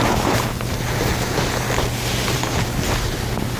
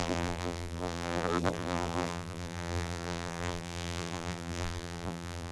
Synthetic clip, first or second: second